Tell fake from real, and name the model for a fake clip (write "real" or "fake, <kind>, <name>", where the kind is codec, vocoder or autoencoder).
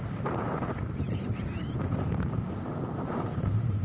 fake, vocoder, BigVGAN v2